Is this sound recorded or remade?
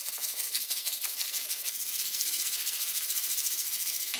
remade